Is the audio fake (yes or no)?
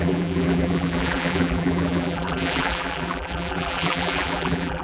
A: yes